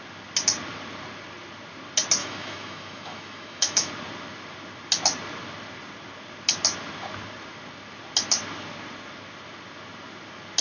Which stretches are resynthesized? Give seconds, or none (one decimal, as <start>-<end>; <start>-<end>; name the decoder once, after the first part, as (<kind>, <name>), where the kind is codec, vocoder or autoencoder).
2.2-3.9 (autoencoder, DAC-VAE)